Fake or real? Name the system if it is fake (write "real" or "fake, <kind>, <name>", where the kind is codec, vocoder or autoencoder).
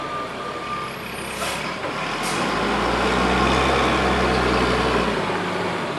real